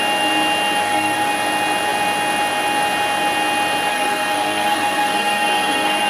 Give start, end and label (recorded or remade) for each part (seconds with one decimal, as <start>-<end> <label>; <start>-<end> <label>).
0.0-0.8 recorded; 0.8-1.3 remade; 1.3-3.9 recorded; 3.9-6.1 remade